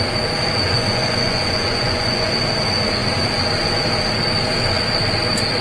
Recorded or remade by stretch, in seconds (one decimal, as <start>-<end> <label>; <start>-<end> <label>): 0.0-0.6 recorded; 0.6-2.3 remade; 2.3-5.6 recorded